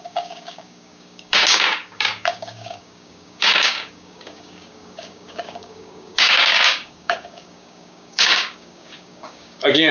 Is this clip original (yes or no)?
no